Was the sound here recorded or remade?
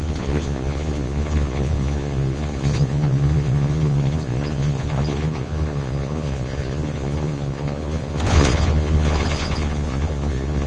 remade